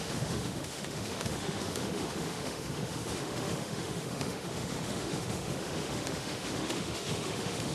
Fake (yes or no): yes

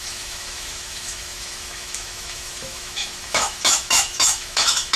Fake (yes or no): yes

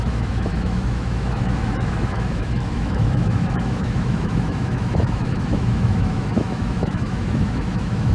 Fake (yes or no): yes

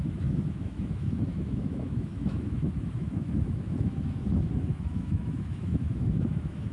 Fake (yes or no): yes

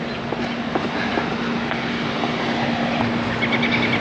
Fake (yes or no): no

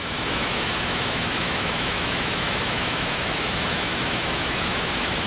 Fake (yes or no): yes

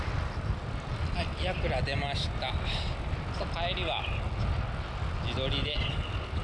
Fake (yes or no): no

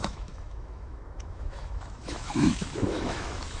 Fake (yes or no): yes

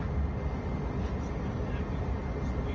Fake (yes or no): no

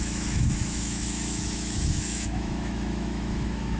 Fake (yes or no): yes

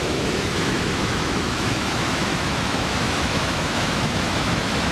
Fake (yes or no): yes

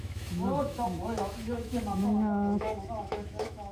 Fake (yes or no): yes